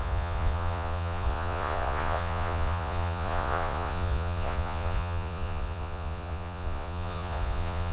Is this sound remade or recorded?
remade